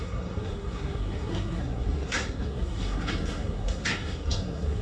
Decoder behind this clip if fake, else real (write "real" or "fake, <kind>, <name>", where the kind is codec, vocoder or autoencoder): fake, codec, SNAC